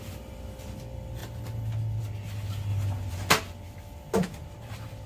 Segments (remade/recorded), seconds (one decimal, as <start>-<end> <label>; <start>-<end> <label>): 0.0-5.1 recorded